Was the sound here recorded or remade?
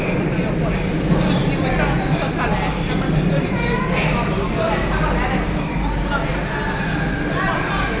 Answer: recorded